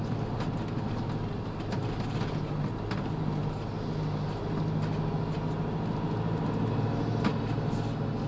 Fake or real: real